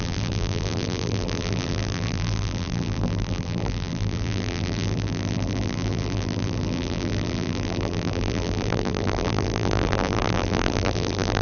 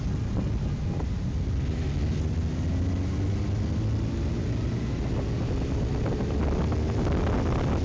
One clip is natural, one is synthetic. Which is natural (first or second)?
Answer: second